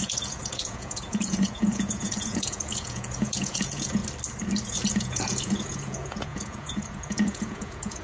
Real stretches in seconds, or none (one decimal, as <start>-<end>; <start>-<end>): 4.0-4.7